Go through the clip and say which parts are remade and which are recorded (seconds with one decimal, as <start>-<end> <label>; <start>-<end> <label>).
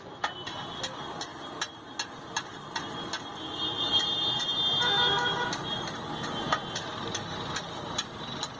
0.0-8.6 recorded